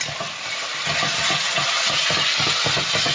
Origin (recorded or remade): recorded